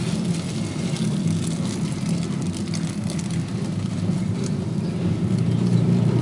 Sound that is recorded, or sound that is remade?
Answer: recorded